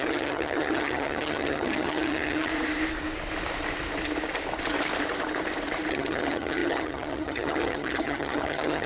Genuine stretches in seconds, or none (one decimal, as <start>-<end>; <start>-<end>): 2.5-5.9